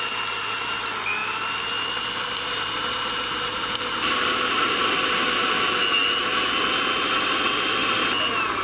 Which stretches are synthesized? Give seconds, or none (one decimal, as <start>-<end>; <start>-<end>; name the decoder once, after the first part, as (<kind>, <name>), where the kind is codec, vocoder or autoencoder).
1.2-5.5 (vocoder, BigVGAN v2)